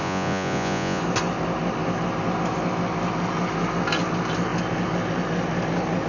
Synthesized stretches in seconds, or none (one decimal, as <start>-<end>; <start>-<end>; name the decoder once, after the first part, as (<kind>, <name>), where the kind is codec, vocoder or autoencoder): 0.0-1.0 (vocoder, Vocos)